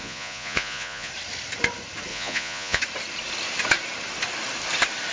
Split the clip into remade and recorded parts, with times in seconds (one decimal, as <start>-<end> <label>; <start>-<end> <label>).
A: 0.0-1.1 remade; 1.1-2.1 recorded; 2.1-2.8 remade; 2.8-5.1 recorded